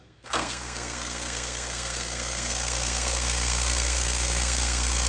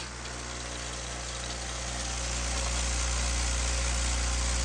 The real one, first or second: second